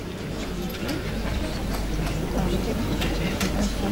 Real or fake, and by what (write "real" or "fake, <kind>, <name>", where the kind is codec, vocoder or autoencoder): real